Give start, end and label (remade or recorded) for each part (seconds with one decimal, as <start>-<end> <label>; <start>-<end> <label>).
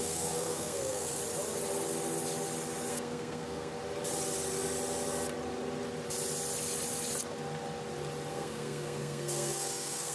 0.0-1.2 remade; 1.2-2.9 recorded; 2.9-3.7 remade; 3.7-8.3 recorded; 8.3-10.1 remade